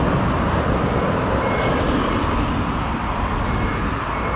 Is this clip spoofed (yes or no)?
yes